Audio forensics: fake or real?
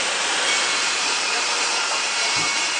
fake